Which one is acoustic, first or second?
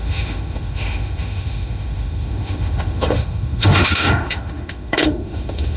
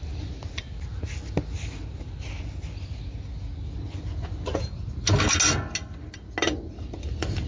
second